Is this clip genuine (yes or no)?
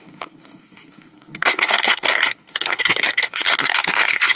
no